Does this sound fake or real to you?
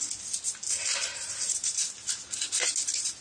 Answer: real